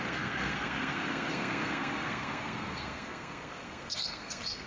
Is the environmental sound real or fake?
fake